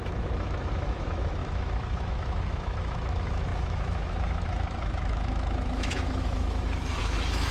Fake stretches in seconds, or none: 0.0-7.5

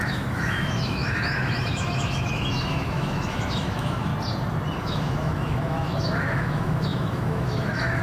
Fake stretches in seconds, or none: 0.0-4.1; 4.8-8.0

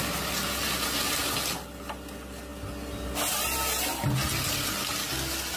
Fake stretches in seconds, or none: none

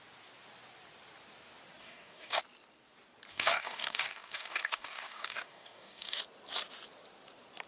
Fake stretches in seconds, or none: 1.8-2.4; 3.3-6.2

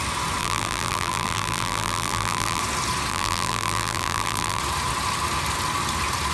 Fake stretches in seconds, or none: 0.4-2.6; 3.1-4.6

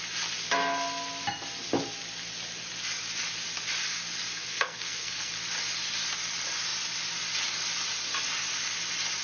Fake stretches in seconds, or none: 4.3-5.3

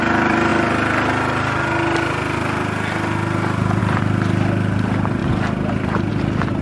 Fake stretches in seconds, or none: 0.0-0.5; 3.8-6.6